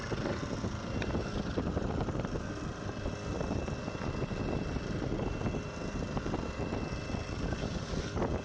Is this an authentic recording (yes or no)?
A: yes